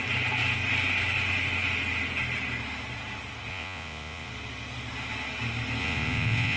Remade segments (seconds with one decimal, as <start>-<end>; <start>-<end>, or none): 3.5-4.3; 5.8-6.6